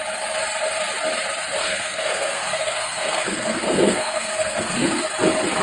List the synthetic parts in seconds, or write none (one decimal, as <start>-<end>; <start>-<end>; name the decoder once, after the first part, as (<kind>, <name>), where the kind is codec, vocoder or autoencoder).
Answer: 1.6-5.0 (codec, SNAC)

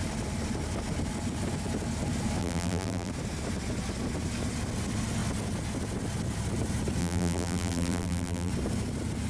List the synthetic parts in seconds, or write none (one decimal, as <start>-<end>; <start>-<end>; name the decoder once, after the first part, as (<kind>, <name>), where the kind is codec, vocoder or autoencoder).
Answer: 2.4-3.1 (vocoder, BigVGAN v2); 7.0-8.5

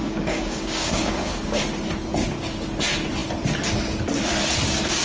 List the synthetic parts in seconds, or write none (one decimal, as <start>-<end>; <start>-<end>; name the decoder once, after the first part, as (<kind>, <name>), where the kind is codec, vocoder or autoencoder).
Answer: 0.0-1.6 (codec, DAC); 2.2-2.7

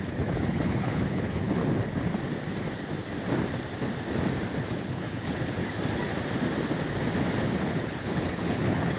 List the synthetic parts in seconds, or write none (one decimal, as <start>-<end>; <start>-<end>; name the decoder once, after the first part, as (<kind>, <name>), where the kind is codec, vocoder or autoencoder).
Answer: 0.0-1.6 (codec, HILCodec); 4.6-5.6; 7.6-9.0

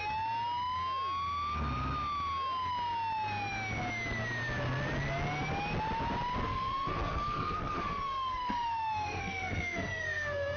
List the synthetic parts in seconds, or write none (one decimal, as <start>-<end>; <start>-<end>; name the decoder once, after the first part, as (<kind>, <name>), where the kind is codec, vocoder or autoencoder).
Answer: 6.4-10.6 (codec, SNAC)

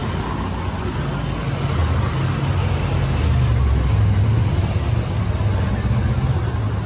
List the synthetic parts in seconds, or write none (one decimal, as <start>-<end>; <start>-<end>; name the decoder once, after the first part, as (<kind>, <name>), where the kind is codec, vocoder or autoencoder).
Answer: none

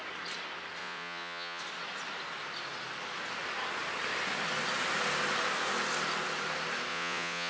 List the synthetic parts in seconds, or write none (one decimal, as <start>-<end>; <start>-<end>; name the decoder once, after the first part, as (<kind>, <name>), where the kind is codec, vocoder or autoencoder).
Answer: 0.8-1.6 (vocoder, Vocos); 6.9-7.5